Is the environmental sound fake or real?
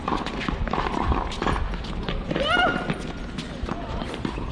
real